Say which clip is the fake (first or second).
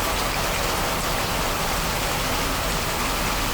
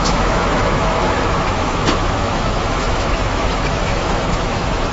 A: second